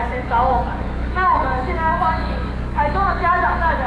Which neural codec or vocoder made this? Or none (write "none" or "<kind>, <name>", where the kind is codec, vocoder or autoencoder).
codec, DAC